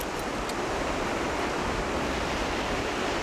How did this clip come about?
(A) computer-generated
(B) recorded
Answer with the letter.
B